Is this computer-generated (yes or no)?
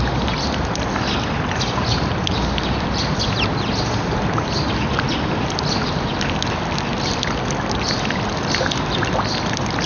no